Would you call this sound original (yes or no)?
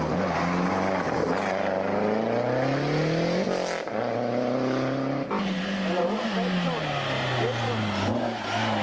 yes